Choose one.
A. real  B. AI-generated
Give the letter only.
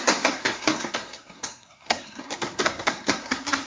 B